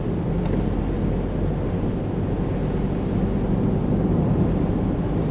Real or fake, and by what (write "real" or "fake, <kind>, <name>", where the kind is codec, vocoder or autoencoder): real